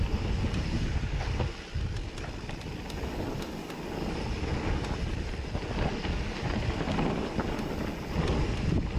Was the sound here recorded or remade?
recorded